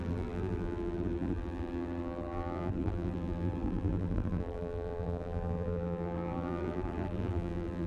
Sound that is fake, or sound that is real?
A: fake